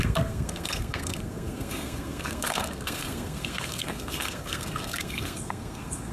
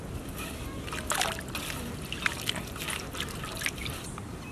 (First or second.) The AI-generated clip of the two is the first